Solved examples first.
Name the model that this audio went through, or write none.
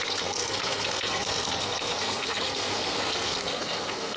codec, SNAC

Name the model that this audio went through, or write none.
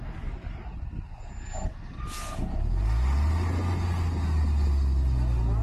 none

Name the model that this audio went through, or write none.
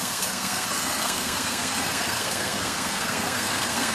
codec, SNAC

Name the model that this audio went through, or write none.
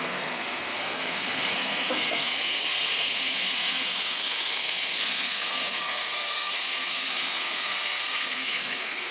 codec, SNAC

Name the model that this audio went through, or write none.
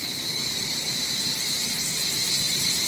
none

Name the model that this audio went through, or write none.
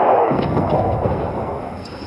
codec, SNAC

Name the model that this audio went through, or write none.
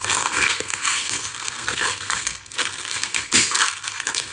codec, SNAC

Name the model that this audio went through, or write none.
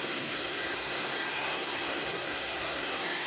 codec, SNAC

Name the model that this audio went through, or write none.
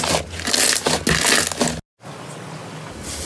none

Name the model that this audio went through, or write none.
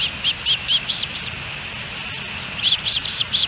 none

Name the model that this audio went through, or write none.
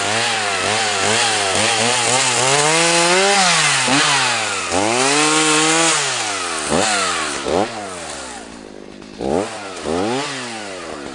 none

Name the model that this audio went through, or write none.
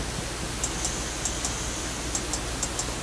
none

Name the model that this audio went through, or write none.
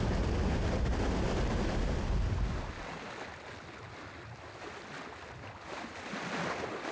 none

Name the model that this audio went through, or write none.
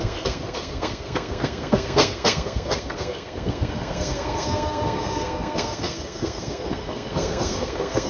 codec, SNAC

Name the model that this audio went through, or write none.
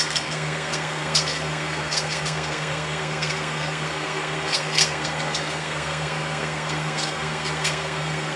codec, SNAC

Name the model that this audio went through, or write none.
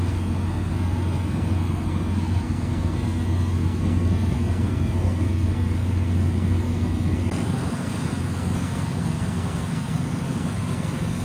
codec, SNAC